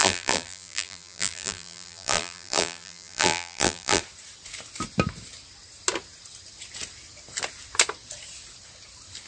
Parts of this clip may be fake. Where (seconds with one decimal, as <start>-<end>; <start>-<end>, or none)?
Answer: 0.0-4.0